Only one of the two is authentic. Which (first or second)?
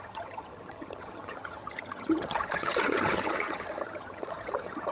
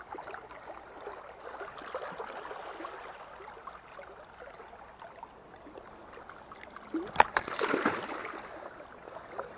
second